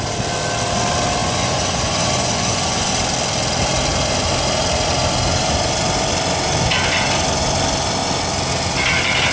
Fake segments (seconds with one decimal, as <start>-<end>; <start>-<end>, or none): 1.2-2.9